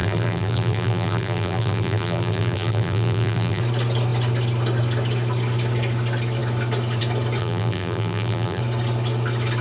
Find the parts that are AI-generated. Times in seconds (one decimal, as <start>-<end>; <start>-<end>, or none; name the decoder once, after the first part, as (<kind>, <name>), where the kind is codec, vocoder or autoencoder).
0.0-3.6 (vocoder, BigVGAN v2); 7.4-8.6